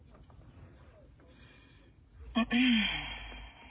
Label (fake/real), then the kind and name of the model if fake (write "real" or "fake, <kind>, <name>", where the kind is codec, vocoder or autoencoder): real